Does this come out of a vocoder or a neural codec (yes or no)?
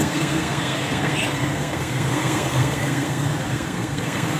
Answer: yes